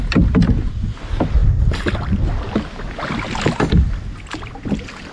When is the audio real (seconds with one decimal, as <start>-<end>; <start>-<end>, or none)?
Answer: 0.0-5.1